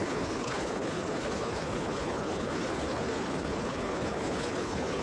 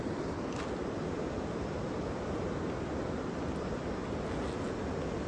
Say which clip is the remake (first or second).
first